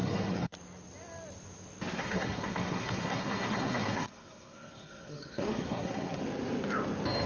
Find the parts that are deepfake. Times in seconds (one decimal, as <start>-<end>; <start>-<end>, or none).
0.0-0.5; 2.0-6.2

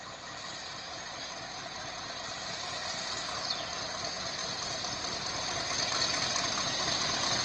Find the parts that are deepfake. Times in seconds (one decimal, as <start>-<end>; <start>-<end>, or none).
4.4-5.0

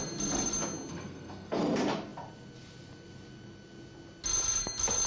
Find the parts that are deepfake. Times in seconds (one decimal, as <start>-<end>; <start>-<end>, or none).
0.9-1.6